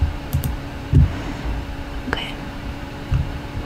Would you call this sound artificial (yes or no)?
yes